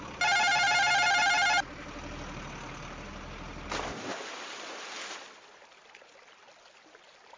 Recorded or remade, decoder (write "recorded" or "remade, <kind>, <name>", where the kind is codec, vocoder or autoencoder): recorded